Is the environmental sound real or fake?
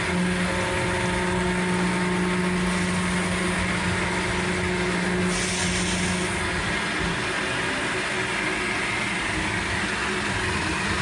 real